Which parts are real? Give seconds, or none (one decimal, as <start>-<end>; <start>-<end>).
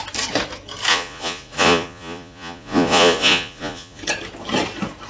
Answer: 0.0-0.9; 4.0-5.1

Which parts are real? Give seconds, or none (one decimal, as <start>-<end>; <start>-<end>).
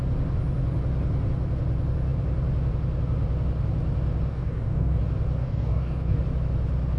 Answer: 0.0-4.3; 5.0-5.4; 6.2-7.0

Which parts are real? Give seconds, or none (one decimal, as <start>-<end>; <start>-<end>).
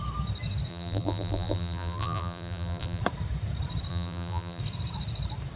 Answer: 0.0-0.7; 3.0-3.9; 4.6-5.6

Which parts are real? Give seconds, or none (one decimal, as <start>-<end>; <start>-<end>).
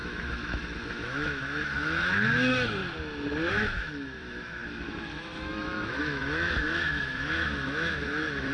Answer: 2.8-3.5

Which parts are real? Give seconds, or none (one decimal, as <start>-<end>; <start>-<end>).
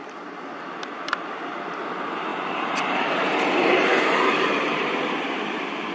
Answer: 0.0-1.1; 1.8-2.3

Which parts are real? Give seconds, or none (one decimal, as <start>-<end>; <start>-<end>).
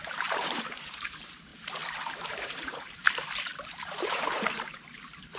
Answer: 1.5-2.1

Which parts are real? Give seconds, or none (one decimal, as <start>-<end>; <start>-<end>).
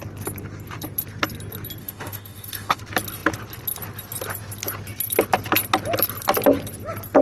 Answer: 0.0-1.8; 2.8-7.2